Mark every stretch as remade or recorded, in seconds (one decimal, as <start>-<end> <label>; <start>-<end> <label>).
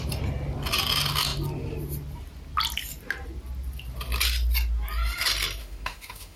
0.0-5.6 recorded; 5.6-6.4 remade